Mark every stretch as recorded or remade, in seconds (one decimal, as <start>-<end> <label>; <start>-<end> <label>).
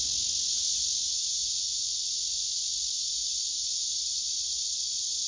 0.0-3.9 recorded; 3.9-5.3 remade